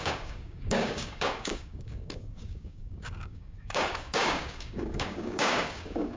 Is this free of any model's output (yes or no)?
no